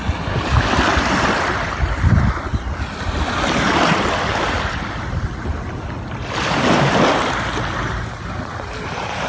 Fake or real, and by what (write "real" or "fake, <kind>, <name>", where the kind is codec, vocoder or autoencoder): real